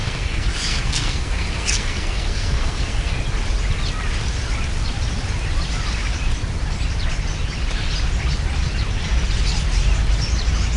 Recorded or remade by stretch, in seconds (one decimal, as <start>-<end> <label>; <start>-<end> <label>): 0.0-3.2 remade; 3.2-10.8 recorded